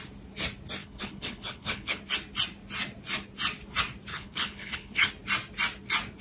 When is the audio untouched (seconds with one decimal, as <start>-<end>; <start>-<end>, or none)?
0.0-0.8; 2.0-4.1; 5.1-6.2